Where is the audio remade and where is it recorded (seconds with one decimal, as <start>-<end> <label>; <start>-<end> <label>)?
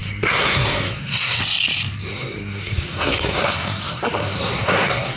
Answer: 0.0-1.4 remade; 1.4-2.1 recorded; 2.1-5.2 remade